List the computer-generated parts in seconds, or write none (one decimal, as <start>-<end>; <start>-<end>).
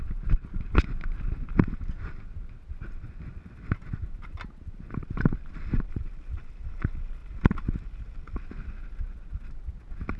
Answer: none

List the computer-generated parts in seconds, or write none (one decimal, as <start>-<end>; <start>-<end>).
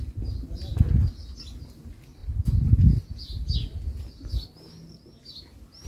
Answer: none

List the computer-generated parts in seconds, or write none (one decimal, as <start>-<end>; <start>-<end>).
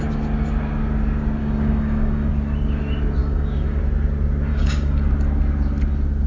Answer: 1.4-2.3; 3.2-3.8; 4.5-5.1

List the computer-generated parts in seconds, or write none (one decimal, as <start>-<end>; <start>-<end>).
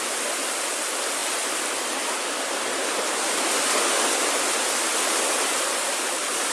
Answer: none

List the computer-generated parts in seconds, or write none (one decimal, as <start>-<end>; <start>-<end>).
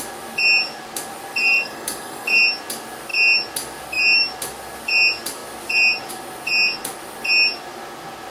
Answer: 1.4-2.4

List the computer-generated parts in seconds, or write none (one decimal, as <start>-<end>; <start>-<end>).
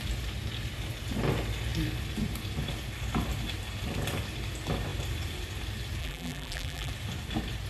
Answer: 6.0-6.9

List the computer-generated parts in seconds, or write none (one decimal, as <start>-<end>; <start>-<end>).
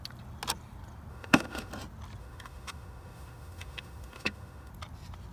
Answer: 1.1-1.7; 2.2-4.7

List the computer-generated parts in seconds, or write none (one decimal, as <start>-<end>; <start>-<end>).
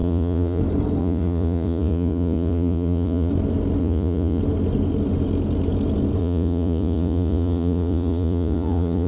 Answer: 0.0-0.6; 1.0-3.3; 3.8-4.4; 6.2-9.1